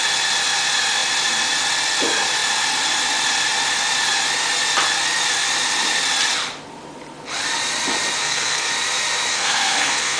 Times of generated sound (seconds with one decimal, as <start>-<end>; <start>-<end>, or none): 8.2-8.7; 9.3-10.2

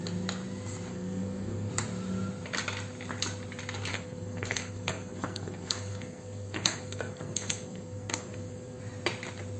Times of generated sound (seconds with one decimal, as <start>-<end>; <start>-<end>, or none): 0.9-1.7; 3.9-8.8

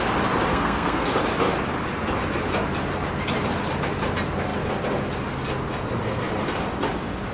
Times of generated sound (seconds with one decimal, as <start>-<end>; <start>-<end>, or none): 0.5-1.1

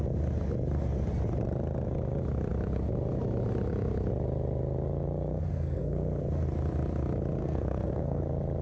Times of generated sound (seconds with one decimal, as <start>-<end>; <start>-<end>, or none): 5.5-6.2; 7.4-8.2

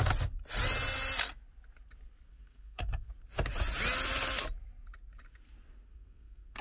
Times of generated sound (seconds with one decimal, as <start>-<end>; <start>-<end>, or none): 2.3-3.1; 5.9-6.6